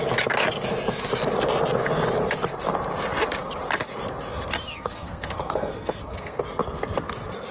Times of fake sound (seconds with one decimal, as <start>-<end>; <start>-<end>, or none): 4.7-6.4

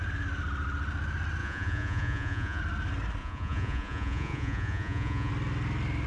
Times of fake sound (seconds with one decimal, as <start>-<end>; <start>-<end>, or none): 1.4-2.6; 3.2-5.3

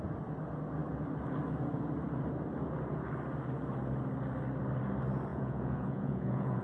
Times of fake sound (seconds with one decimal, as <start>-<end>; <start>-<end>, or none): 5.3-6.6

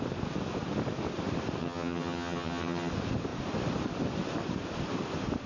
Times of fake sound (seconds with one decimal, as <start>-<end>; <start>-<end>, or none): 1.6-2.9